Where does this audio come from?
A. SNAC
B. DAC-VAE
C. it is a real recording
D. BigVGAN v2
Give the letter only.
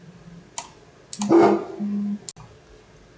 C